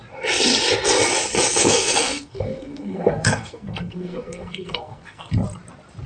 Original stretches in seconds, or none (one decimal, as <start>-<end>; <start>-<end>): 0.0-1.6; 5.3-6.1